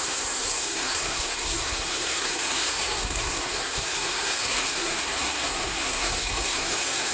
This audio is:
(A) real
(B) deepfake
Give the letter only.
B